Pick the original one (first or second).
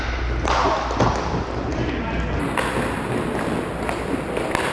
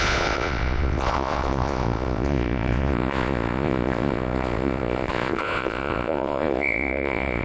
first